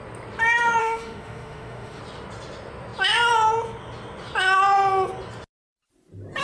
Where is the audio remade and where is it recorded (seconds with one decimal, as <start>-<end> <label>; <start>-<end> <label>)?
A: 0.0-0.8 recorded; 0.8-2.0 remade; 2.0-6.4 recorded